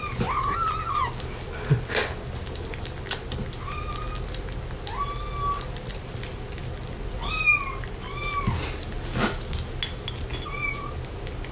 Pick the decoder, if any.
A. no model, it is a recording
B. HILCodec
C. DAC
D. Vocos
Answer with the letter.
A